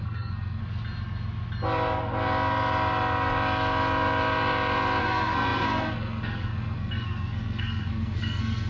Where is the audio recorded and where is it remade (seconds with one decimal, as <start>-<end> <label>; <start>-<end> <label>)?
0.0-0.6 remade; 0.6-5.0 recorded; 5.0-8.7 remade